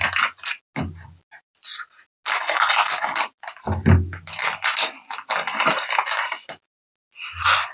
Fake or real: real